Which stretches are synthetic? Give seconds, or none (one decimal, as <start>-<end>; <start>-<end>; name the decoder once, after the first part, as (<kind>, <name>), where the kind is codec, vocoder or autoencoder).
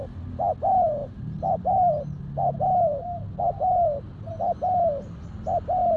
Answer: 1.0-2.2 (vocoder, BigVGAN v2)